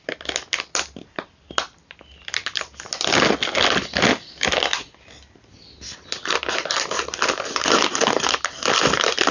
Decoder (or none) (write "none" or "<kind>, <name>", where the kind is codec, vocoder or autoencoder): none